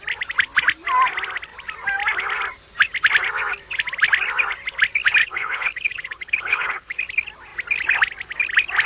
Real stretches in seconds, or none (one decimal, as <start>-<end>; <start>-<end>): 0.0-5.2; 7.0-8.9